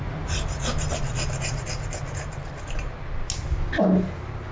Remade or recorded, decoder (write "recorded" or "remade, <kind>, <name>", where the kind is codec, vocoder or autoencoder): recorded